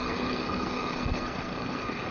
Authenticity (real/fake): fake